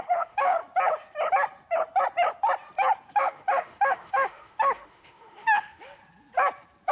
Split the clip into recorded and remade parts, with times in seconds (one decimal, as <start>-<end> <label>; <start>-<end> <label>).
0.0-0.6 remade; 0.6-3.1 recorded; 3.1-6.0 remade; 6.0-6.9 recorded